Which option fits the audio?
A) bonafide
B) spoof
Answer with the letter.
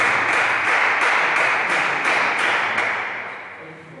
A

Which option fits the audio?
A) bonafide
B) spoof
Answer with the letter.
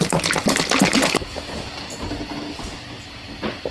A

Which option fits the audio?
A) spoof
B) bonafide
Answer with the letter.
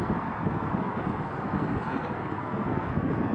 A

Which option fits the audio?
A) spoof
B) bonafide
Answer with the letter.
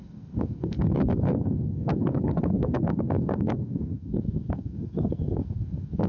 A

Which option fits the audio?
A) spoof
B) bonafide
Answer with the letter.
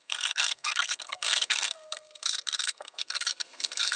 A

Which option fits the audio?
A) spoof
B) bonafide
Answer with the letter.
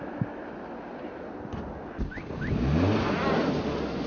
B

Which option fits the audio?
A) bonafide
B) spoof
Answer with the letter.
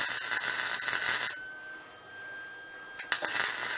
A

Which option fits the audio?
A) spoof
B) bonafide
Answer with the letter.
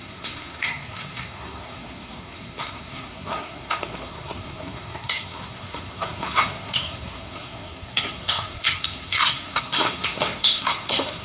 A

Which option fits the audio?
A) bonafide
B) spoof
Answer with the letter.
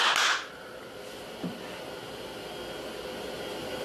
A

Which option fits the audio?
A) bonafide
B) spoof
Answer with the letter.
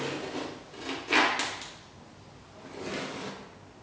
A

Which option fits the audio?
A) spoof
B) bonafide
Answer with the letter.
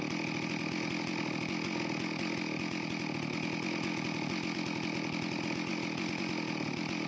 B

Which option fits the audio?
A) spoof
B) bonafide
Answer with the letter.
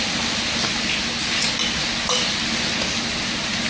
B